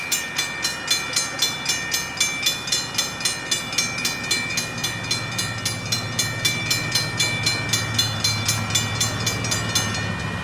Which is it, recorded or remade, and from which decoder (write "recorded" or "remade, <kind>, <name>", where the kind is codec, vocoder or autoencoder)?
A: recorded